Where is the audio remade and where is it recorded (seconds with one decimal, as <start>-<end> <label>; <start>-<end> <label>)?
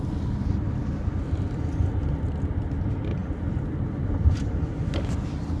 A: 0.0-5.6 recorded